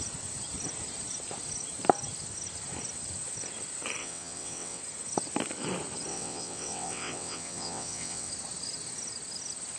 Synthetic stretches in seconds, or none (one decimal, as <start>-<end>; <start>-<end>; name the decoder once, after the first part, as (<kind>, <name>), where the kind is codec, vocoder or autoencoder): 4.0-4.8 (vocoder, WaveNeXt); 6.1-8.3